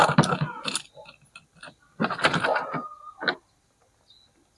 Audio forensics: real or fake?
real